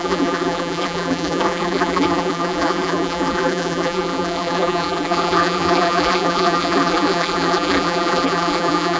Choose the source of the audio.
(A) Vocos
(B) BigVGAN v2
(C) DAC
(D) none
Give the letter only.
B